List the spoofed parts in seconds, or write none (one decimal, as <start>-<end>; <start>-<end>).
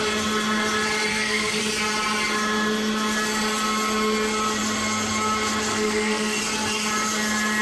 1.1-1.6; 5.7-6.4